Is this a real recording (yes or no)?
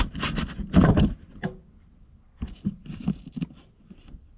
yes